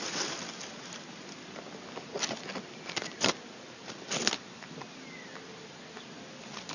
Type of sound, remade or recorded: recorded